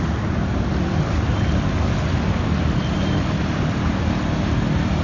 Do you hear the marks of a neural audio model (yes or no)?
no